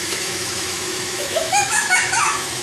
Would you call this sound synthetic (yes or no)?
yes